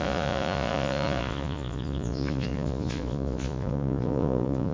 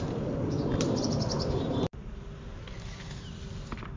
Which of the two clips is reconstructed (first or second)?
first